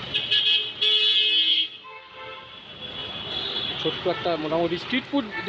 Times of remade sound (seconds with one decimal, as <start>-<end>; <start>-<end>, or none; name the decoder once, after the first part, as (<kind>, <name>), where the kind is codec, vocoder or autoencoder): 1.5-2.1 (codec, SNAC)